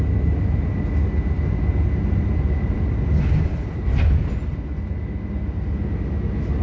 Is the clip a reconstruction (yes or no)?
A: no